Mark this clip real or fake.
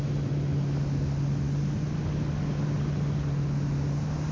real